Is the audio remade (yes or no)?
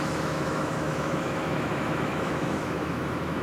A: yes